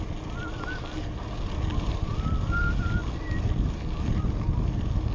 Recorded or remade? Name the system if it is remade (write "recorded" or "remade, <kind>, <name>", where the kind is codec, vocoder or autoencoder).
recorded